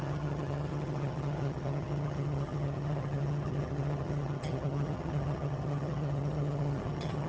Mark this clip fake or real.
fake